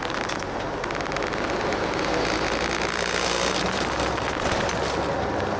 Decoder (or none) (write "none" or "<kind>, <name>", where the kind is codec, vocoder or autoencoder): none